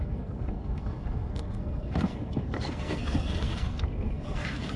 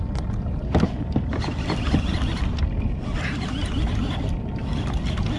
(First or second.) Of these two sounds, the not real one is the first